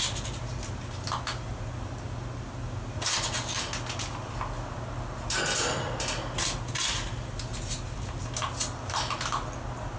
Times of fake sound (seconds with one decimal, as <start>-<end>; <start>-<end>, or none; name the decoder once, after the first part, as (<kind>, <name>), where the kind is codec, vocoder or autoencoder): none